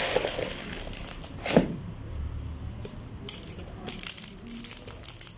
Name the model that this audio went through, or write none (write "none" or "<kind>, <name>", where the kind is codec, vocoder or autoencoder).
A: none